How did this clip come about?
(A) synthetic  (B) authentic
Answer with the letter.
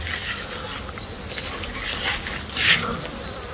B